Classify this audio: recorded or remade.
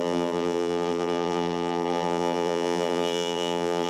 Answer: remade